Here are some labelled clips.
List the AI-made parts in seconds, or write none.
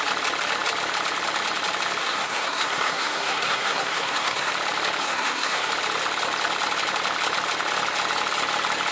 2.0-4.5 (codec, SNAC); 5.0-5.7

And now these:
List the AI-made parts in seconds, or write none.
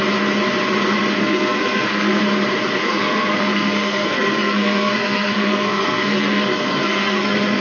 1.2-2.2 (codec, SNAC); 2.8-7.6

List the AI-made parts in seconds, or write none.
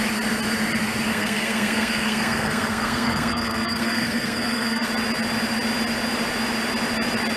1.1-4.9 (codec, SNAC)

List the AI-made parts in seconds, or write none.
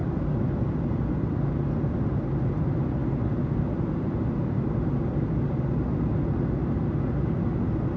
none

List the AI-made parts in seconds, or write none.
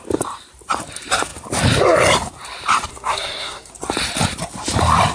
2.9-3.7 (codec, SNAC)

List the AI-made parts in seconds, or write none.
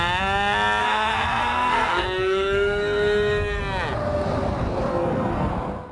0.8-3.6 (codec, SNAC); 4.9-5.5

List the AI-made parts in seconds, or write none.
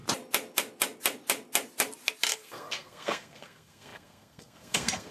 2.3-5.1 (codec, SNAC)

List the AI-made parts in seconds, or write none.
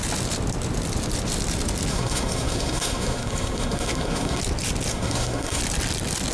1.9-4.4 (codec, SNAC); 4.9-5.6